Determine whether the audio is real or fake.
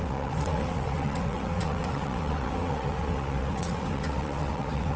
fake